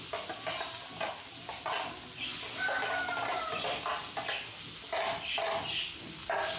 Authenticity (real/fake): real